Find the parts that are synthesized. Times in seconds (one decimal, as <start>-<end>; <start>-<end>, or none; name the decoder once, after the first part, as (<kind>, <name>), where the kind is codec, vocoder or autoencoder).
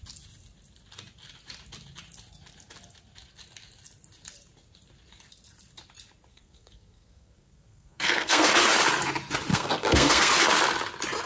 6.3-8.5 (codec, SNAC); 9.5-10.3